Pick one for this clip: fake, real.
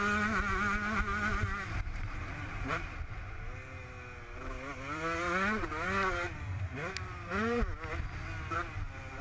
real